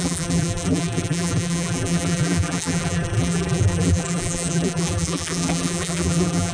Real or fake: fake